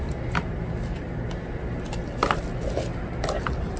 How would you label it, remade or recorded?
recorded